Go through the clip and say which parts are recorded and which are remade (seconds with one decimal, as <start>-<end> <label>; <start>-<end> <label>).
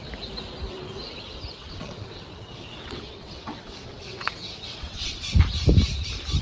0.0-1.6 recorded; 1.6-5.3 remade; 5.3-6.4 recorded